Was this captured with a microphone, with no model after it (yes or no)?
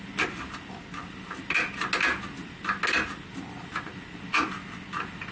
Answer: yes